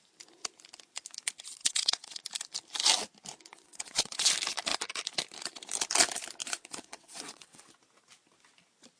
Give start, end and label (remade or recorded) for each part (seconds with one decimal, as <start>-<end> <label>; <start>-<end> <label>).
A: 0.0-1.6 recorded; 1.6-2.2 remade; 2.2-3.5 recorded; 3.5-4.3 remade; 4.3-6.4 recorded; 6.4-7.7 remade; 7.7-9.0 recorded